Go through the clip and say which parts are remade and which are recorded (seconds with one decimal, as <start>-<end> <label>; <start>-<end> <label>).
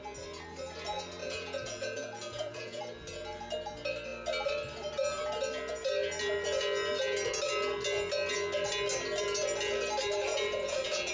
0.0-1.2 recorded; 1.2-2.8 remade; 2.8-10.3 recorded; 10.3-11.1 remade